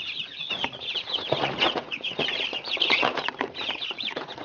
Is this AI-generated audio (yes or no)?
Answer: yes